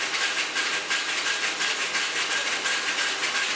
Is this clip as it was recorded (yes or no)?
yes